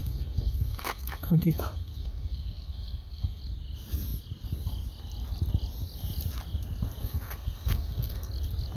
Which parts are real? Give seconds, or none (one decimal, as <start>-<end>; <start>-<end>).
3.4-7.0; 8.3-8.8